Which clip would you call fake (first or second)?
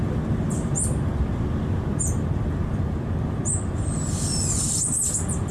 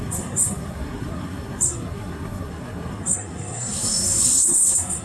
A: second